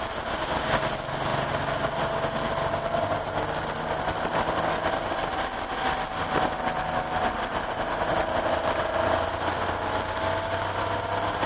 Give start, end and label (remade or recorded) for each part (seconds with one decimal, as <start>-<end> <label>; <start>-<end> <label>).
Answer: 0.0-11.5 recorded